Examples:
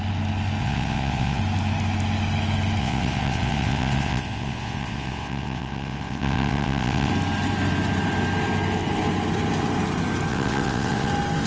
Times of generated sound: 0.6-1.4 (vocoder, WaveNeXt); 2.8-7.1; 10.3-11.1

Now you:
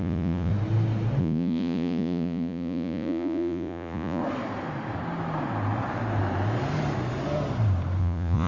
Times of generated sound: 0.0-0.5 (vocoder, Vocos); 1.2-4.2; 8.0-8.5

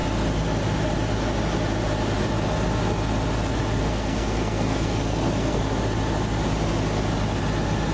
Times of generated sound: 3.8-5.6 (codec, SNAC)

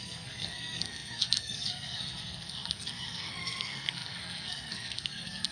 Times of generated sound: 0.0-5.5 (codec, SNAC)